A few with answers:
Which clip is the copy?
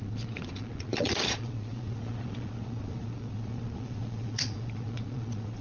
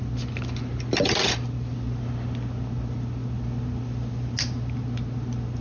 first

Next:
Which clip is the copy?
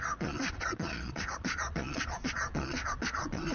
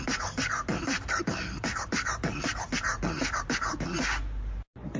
first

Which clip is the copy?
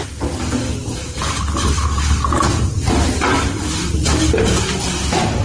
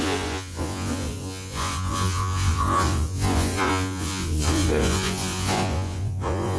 second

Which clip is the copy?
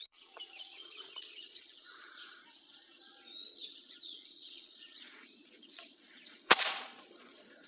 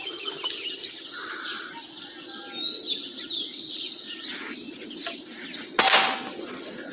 first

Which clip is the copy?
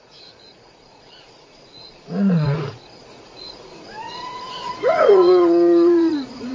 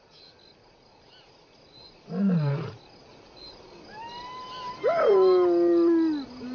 first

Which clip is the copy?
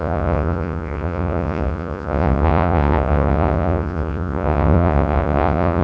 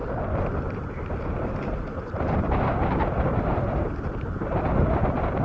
first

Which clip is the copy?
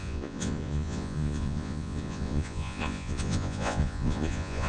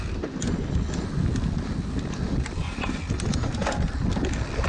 first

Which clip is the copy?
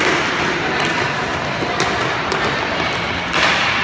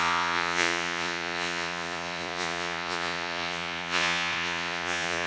second